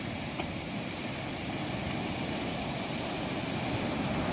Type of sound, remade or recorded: remade